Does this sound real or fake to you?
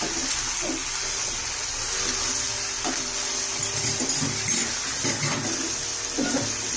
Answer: real